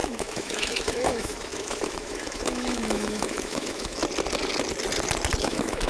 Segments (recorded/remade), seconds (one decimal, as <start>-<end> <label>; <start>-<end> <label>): 0.0-4.0 remade; 4.0-5.4 recorded; 5.4-5.9 remade